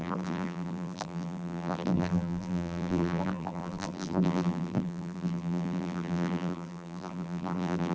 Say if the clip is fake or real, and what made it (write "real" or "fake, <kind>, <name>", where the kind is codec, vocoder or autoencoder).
fake, vocoder, BigVGAN v2